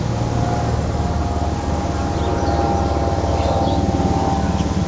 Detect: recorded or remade recorded